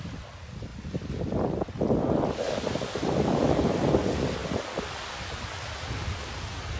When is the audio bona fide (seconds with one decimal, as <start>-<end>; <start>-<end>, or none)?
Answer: 0.0-6.8